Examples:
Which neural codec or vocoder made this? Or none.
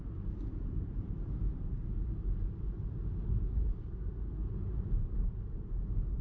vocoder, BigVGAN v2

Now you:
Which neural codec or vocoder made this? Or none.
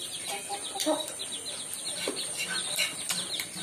vocoder, BigVGAN v2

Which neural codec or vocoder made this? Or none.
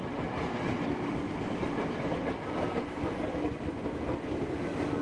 none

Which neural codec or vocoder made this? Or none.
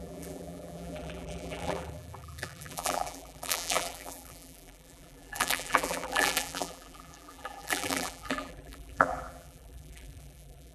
vocoder, BigVGAN v2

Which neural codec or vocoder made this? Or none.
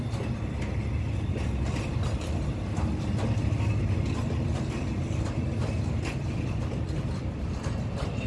none